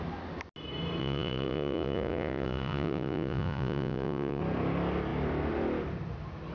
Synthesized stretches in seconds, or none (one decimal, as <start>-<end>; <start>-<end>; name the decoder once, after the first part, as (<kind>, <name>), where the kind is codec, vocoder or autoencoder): 1.0-4.4 (vocoder, Vocos)